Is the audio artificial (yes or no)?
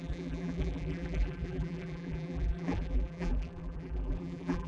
yes